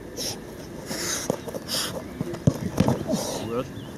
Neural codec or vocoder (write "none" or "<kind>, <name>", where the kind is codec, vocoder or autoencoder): none